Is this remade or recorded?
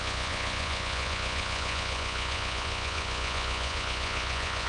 remade